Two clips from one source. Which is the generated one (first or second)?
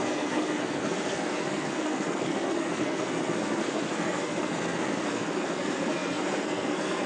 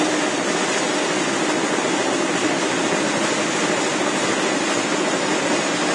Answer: first